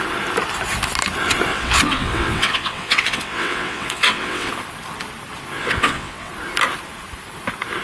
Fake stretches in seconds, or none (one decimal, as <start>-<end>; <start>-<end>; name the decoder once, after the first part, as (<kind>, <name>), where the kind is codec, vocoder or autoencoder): 1.5-4.5 (vocoder, WaveNeXt); 5.6-6.3